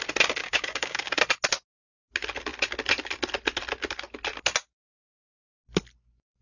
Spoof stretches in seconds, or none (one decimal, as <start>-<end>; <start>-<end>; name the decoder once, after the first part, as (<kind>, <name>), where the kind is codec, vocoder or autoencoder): 0.4-1.2 (codec, DAC)